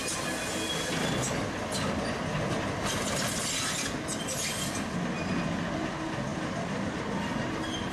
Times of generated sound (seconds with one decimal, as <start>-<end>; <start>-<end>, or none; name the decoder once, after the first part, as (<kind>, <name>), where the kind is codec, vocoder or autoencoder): 6.3-7.0 (vocoder, BigVGAN v2)